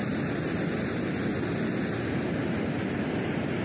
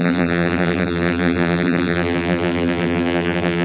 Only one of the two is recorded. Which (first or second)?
first